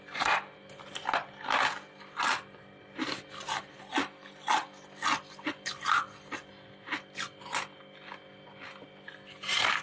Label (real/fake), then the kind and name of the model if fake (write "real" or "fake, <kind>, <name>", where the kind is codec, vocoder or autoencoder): real